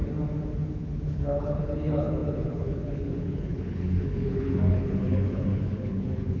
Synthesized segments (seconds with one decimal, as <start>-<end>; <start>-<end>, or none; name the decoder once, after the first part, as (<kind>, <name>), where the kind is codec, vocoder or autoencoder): 0.7-6.4 (codec, HILCodec)